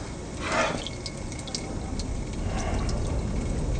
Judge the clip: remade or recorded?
recorded